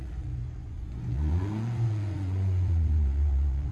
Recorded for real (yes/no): no